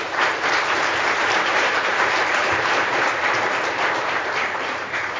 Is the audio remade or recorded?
remade